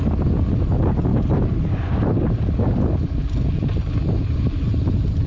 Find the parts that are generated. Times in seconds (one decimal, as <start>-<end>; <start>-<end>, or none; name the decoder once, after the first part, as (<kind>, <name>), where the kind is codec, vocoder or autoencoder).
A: 1.1-1.6 (vocoder, BigVGAN v2)